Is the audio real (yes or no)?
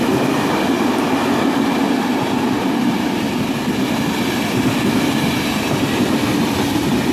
yes